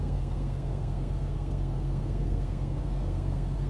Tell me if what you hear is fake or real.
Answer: fake